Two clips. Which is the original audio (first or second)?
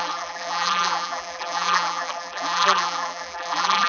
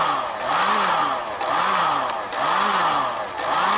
second